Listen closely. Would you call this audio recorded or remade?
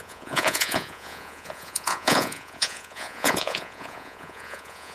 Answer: remade